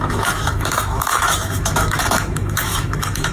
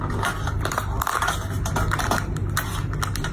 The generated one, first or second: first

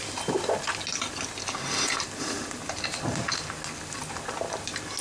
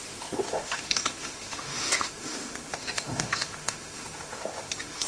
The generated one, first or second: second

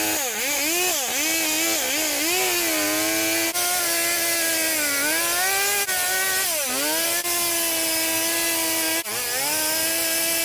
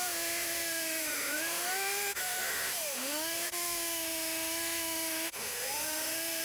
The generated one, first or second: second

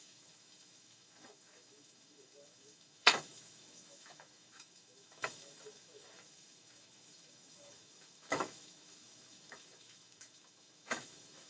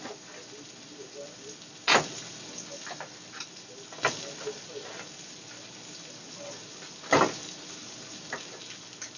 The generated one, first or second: first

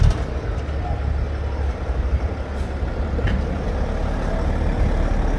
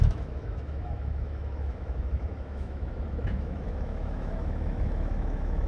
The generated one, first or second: second